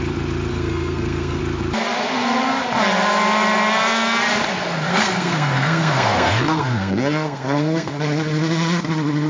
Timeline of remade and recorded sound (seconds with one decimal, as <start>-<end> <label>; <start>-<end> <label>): 0.0-0.5 recorded; 0.5-1.4 remade; 1.4-4.9 recorded; 4.9-8.0 remade; 8.0-9.3 recorded